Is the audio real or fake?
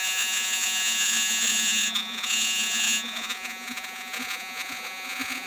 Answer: fake